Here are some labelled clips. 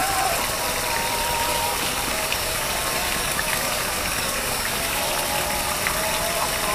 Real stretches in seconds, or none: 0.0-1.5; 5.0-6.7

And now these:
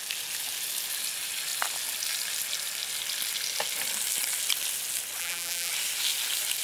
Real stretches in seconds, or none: 0.0-5.2; 5.7-6.6

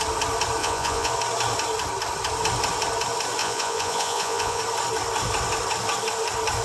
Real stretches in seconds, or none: 0.0-0.6; 1.1-3.4; 4.6-6.6

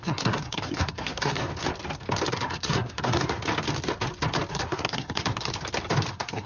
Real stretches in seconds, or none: 1.5-2.3; 3.4-4.5; 5.5-6.1